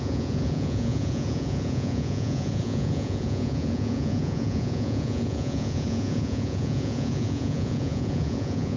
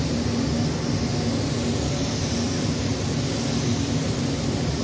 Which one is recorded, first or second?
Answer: second